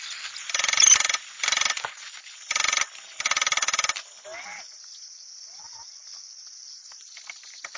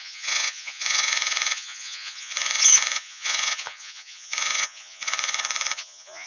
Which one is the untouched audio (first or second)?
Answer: first